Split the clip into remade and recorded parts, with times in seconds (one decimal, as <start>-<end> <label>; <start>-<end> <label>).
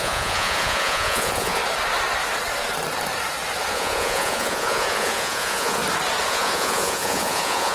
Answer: 0.0-1.6 remade; 1.6-3.7 recorded; 3.7-5.8 remade; 5.8-6.3 recorded; 6.3-7.7 remade